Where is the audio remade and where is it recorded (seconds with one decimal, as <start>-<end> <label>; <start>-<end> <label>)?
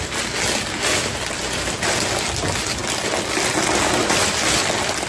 0.0-5.1 recorded